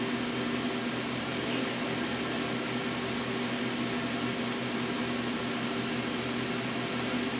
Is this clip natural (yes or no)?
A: yes